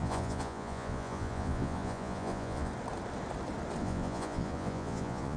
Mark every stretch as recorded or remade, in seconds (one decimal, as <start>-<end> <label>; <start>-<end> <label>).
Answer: 0.0-2.7 remade; 2.7-3.8 recorded; 3.8-5.4 remade